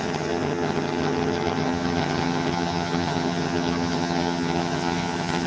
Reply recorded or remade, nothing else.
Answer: remade